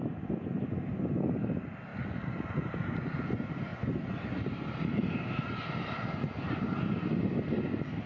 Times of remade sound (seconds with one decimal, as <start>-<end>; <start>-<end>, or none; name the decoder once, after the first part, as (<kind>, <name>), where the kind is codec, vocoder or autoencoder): none